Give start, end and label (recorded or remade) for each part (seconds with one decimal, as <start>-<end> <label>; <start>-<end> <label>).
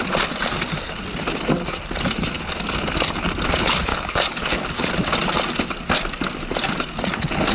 0.0-3.9 recorded; 3.9-4.9 remade; 4.9-7.5 recorded